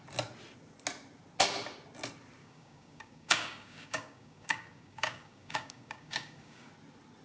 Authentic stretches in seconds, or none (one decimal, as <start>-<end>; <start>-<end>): 0.0-2.4; 6.7-7.2